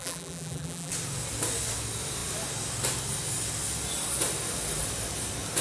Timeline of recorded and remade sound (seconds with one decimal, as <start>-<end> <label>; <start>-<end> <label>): 0.0-0.9 remade; 0.9-5.6 recorded